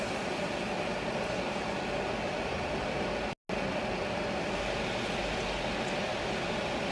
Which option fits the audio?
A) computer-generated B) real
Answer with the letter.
B